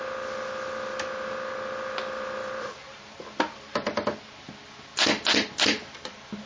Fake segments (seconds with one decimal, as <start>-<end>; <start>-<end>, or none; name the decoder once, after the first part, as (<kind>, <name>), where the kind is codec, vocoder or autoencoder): 2.4-3.0 (vocoder, BigVGAN v2); 4.9-6.5